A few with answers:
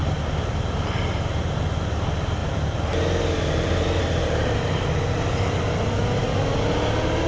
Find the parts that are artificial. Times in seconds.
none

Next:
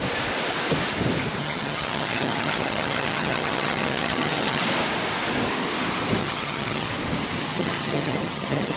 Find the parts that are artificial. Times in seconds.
1.4-4.6 (vocoder, HiFi-GAN); 6.2-6.9; 7.5-8.8

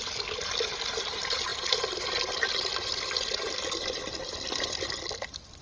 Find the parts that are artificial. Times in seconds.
none

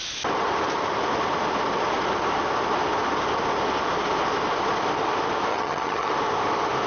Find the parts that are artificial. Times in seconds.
5.5-6.1 (vocoder, HiFi-GAN)

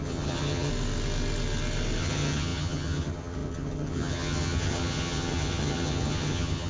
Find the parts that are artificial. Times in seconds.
0.0-0.7 (vocoder, HiFi-GAN); 2.0-6.7

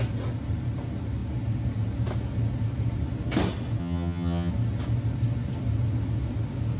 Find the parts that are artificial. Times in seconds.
3.8-4.5 (vocoder, HiFi-GAN)

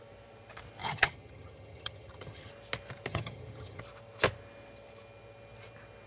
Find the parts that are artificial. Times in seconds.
0.8-2.5 (vocoder, HiFi-GAN); 3.1-3.8